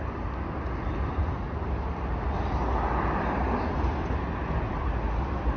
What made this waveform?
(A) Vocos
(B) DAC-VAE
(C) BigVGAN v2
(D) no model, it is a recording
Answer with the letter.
D